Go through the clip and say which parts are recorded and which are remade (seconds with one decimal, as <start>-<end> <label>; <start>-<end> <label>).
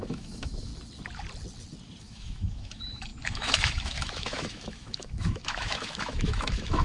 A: 0.0-0.7 remade; 0.7-2.0 recorded; 2.0-6.8 remade